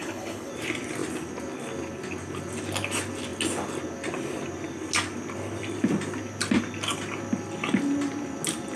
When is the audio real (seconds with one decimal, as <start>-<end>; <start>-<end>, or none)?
0.5-8.8